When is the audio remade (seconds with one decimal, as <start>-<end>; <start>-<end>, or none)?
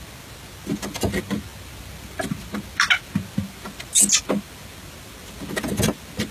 none